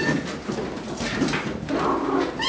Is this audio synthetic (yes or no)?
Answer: no